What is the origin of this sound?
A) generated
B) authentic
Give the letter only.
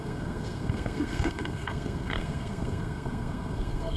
A